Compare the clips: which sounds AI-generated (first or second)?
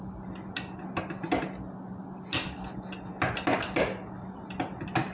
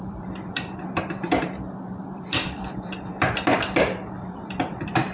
second